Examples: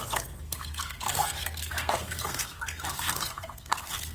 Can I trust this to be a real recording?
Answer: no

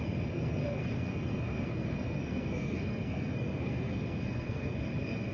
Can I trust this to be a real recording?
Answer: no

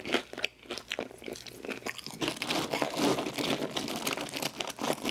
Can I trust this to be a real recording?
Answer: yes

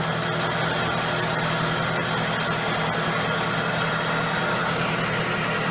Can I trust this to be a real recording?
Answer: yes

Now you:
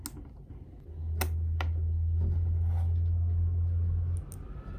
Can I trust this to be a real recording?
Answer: yes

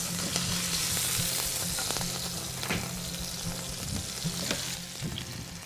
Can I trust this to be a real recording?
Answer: yes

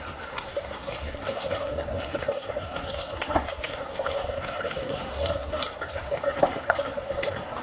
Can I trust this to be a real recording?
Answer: no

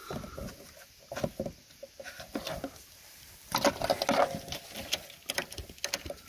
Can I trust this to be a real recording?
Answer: yes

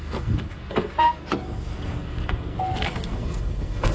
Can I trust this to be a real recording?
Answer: no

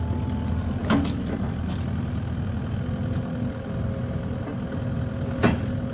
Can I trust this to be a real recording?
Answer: yes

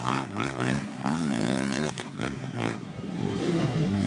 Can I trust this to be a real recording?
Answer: no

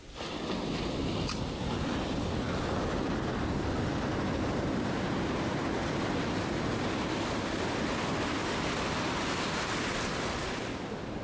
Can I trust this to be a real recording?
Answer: yes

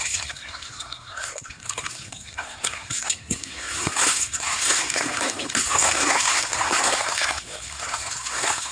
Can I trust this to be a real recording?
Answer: no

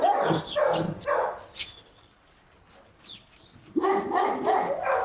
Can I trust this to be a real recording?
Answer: yes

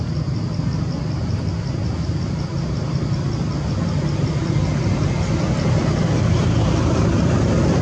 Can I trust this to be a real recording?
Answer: yes